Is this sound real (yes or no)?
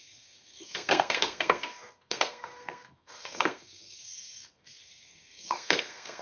no